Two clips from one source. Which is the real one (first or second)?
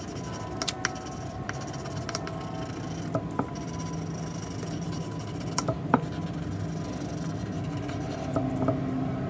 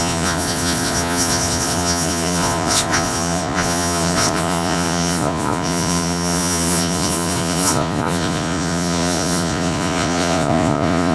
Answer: first